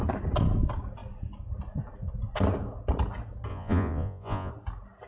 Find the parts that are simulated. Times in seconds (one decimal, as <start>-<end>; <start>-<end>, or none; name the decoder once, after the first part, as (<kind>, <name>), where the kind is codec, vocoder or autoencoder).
3.5-4.5 (vocoder, Vocos)